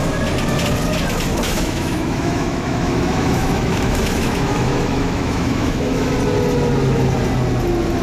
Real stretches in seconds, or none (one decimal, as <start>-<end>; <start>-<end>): 0.0-1.3; 6.1-8.0